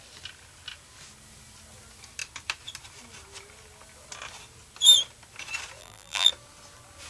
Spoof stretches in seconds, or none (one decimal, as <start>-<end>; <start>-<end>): 5.8-6.3